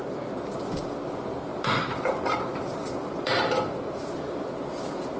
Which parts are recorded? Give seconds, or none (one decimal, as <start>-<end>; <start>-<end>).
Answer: 0.0-1.5; 4.0-5.2